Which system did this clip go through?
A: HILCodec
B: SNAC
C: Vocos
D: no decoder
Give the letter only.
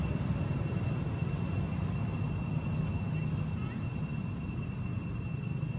D